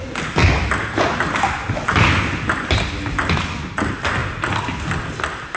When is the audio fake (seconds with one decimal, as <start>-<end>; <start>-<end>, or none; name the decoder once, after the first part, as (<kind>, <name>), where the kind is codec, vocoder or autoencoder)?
none